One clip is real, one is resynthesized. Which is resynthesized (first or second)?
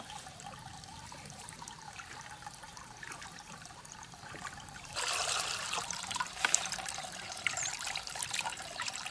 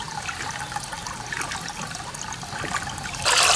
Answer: first